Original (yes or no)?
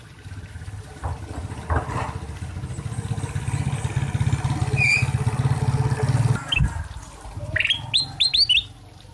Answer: yes